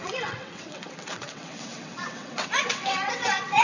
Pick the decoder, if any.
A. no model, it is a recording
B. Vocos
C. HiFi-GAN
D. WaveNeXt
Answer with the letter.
D